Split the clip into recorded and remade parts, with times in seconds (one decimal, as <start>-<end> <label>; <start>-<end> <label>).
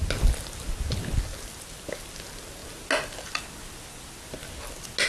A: 0.0-5.1 recorded